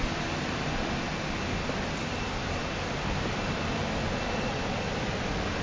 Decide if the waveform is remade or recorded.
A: recorded